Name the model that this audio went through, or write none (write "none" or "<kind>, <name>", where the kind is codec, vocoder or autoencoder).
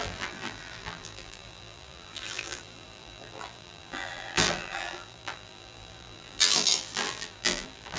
vocoder, BigVGAN v2